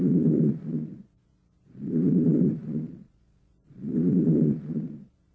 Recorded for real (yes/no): no